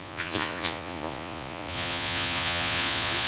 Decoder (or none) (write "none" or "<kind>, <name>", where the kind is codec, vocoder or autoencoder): vocoder, Vocos